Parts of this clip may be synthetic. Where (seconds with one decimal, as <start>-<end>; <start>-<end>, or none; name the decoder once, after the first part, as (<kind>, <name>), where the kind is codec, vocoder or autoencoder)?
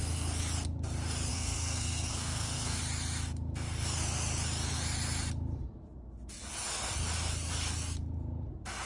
1.3-2.8 (codec, SNAC)